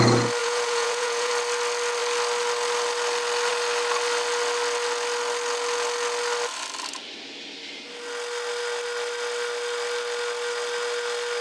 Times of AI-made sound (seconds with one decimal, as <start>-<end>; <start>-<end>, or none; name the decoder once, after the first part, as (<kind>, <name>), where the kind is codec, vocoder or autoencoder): 0.4-1.3 (vocoder, Vocos)